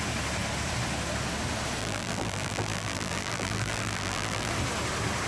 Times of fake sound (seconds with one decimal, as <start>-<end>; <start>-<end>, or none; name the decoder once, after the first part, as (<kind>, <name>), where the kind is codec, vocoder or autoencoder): 1.8-4.5 (vocoder, BigVGAN v2)